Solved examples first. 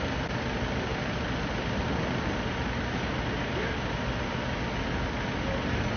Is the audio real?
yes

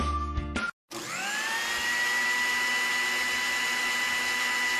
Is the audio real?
yes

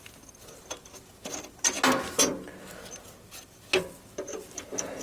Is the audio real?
yes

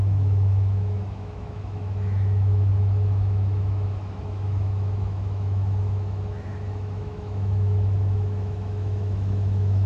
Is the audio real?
no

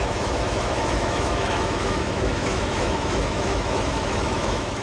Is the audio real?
no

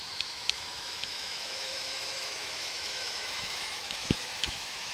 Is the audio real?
no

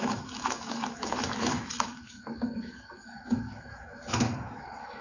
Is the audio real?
no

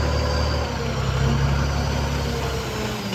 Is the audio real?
yes